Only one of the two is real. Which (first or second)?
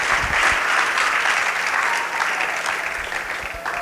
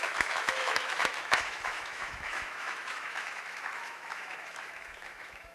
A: first